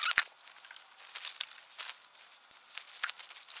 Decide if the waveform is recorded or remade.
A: recorded